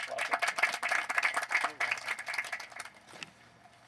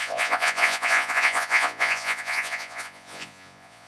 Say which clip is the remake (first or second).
second